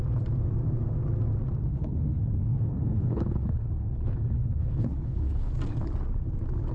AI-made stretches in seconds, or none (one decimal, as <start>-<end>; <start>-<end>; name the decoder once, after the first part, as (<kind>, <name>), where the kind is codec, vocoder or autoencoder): 1.7-5.5 (codec, HILCodec)